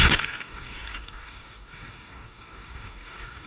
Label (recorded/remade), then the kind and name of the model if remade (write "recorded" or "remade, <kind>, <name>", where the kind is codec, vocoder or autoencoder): remade, codec, DAC